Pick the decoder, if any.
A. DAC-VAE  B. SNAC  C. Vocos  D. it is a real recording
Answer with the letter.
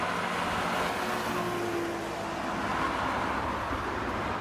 D